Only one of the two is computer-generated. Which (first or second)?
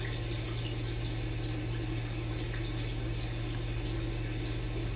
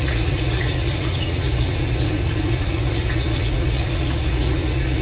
second